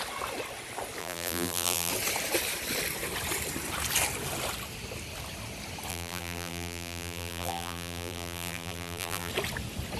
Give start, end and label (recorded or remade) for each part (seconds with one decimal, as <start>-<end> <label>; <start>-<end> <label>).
0.0-1.0 recorded; 1.0-1.9 remade; 1.9-5.9 recorded; 5.9-9.3 remade; 9.3-10.0 recorded